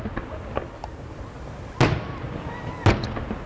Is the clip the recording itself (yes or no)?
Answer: yes